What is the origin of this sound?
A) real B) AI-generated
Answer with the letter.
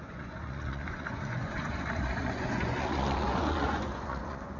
B